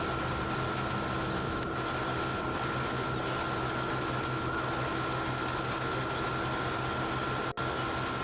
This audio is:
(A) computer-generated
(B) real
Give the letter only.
B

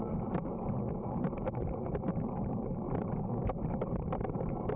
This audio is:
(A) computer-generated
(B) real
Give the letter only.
B